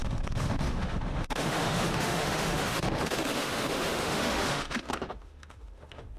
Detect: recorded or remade remade